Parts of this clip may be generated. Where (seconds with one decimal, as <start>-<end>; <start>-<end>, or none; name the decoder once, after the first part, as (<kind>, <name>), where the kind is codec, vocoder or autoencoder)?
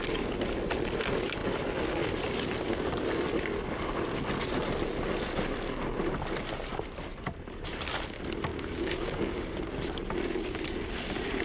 8.5-9.6 (codec, DAC)